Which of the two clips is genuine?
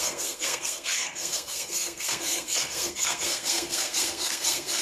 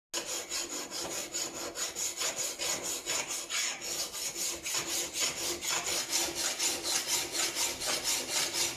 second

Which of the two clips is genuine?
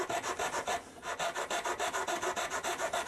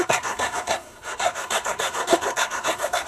first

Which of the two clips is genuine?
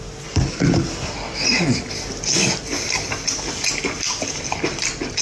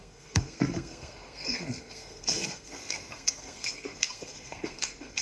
first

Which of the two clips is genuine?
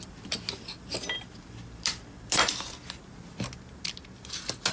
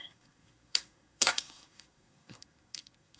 first